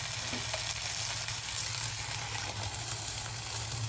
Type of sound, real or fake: real